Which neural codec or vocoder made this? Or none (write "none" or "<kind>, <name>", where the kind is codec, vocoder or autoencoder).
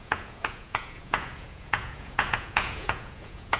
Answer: vocoder, Vocos